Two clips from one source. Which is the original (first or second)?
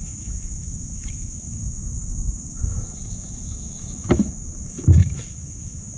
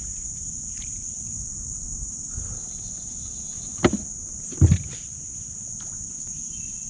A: second